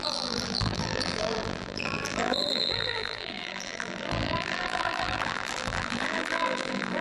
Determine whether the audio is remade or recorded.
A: remade